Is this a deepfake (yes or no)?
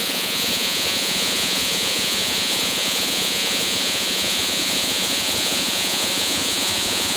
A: yes